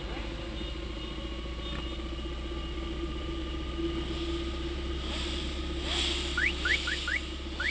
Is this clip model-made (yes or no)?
no